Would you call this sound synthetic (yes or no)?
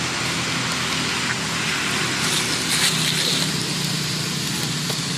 no